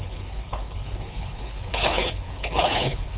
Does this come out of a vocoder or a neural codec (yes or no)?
yes